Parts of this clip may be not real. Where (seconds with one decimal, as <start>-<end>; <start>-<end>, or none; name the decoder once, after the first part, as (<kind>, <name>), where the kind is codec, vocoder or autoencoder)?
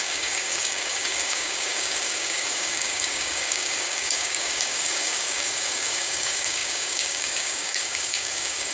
0.0-8.7 (codec, DAC)